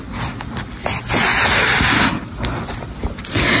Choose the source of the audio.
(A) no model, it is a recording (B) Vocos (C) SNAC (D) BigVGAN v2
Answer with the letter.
A